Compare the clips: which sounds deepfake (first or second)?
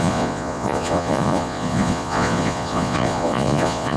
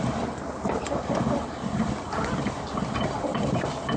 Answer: first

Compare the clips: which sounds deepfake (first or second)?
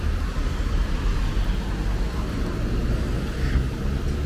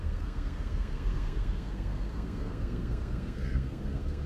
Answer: second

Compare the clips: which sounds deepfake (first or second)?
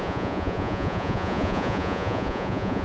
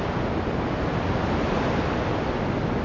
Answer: first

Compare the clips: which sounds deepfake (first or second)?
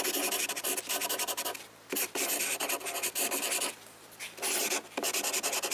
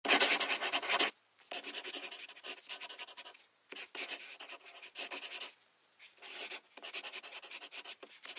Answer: first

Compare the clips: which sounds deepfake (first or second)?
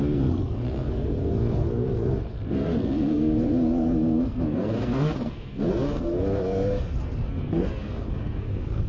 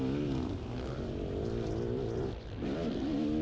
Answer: first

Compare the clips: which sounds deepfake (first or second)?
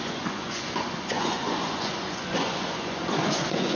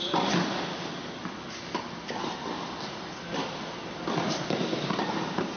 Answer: first